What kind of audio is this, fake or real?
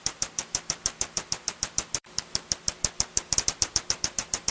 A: fake